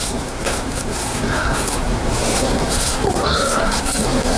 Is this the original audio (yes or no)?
no